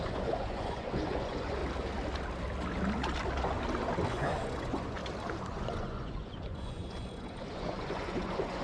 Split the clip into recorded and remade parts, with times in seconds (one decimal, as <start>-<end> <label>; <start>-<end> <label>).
0.0-1.6 remade; 1.6-4.1 recorded; 4.1-5.0 remade; 5.0-5.5 recorded; 5.5-8.6 remade